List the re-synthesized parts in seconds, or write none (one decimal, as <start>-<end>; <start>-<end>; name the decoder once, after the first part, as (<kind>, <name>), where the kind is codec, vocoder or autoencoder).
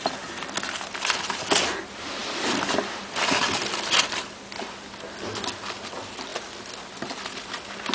none